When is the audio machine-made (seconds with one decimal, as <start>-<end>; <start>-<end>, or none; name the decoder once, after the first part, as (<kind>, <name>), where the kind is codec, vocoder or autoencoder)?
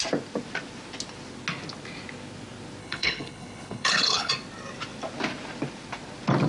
2.8-4.3 (codec, HILCodec)